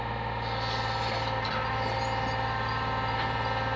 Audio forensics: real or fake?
real